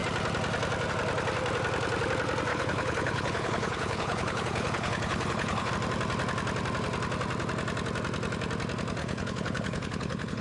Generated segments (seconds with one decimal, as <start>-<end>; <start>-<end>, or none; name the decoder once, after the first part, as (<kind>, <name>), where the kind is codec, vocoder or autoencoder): 2.5-5.7 (codec, HILCodec); 9.0-10.4